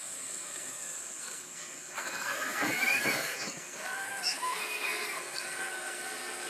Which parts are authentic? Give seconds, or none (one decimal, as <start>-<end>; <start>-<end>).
none